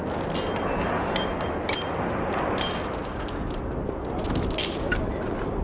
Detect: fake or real real